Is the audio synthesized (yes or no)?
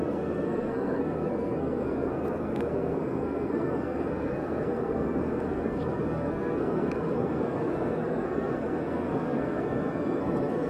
yes